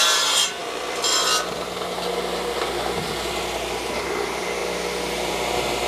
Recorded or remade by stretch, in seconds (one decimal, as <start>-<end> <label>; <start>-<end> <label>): 0.0-5.9 recorded